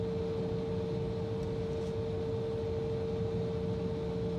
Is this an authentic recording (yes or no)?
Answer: yes